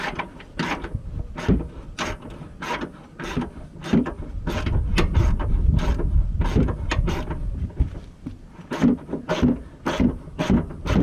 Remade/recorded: recorded